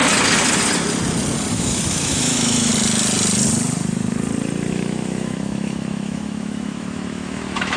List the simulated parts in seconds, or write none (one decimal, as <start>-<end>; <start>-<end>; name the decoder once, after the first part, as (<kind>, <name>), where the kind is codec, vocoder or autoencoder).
1.5-2.7 (autoencoder, DAC-VAE); 4.7-7.8